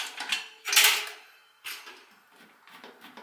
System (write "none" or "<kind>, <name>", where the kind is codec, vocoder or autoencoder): none